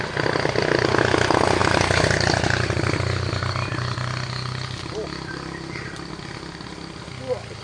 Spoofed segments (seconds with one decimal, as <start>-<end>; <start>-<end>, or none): none